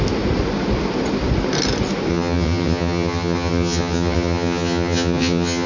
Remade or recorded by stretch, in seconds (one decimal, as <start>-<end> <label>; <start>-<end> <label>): 0.0-2.1 recorded; 2.1-5.7 remade